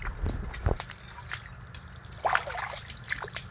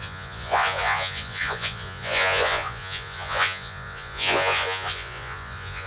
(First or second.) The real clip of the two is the first